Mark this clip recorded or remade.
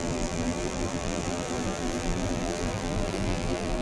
remade